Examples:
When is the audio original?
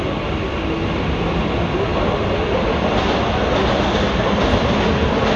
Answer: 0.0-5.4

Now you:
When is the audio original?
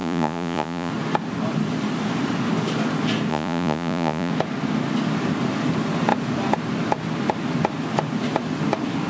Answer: 0.9-3.3; 4.3-9.1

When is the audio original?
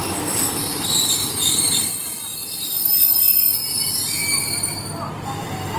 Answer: 1.7-2.3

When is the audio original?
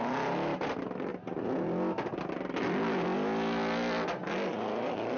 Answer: 0.0-5.2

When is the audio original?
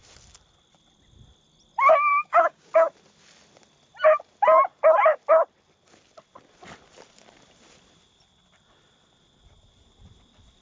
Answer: 0.0-2.1; 2.7-10.6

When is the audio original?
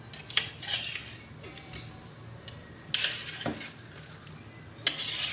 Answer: 0.0-5.3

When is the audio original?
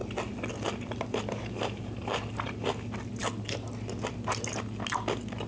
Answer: 0.0-5.5